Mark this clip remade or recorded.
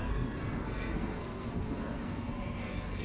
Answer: remade